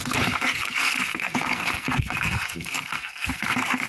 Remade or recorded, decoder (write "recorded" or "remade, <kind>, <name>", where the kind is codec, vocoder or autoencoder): remade, codec, SNAC